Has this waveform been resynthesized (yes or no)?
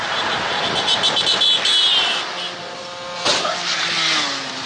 no